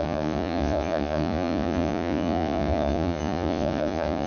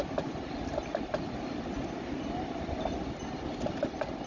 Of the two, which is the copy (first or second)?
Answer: first